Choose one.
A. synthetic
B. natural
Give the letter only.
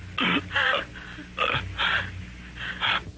B